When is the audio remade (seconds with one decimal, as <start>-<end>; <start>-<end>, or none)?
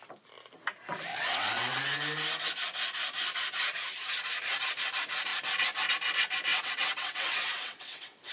1.1-1.8; 6.5-8.3